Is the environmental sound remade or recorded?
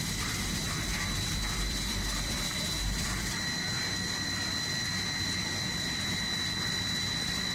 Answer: remade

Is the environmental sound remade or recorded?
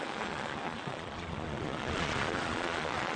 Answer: remade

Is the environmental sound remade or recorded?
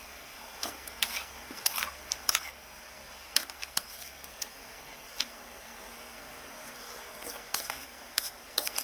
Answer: remade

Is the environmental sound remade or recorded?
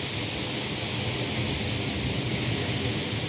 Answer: recorded